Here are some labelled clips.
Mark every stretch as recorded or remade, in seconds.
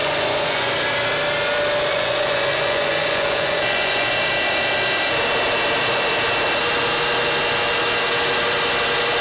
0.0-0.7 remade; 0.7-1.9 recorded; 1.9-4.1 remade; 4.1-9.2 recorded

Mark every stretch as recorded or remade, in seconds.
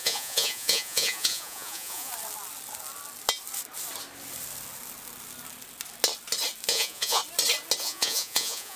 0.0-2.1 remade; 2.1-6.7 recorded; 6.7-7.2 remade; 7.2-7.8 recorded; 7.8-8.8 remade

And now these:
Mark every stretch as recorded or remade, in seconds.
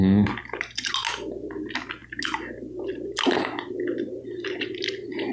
0.0-5.3 recorded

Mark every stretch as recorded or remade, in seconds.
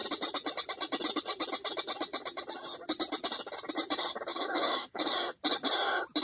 0.0-4.3 recorded; 4.3-5.1 remade; 5.1-6.2 recorded